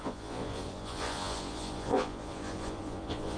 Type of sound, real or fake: fake